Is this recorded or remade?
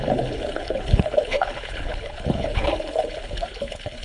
remade